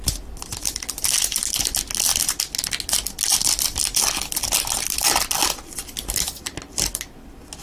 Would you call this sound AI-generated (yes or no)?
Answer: no